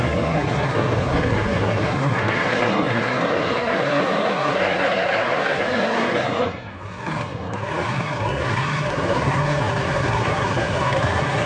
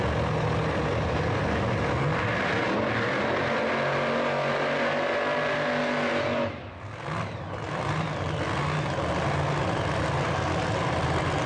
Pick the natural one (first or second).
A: second